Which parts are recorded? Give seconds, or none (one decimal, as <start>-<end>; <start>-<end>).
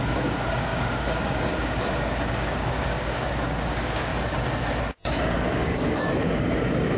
4.1-4.8